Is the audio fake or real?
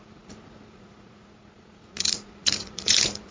fake